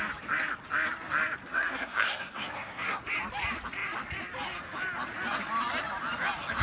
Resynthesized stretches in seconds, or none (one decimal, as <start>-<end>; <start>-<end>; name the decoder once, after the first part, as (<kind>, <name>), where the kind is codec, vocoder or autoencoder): 1.4-3.0 (codec, SNAC)